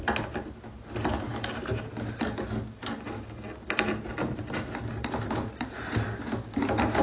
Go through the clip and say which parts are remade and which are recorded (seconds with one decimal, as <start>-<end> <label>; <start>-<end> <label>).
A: 0.0-7.0 recorded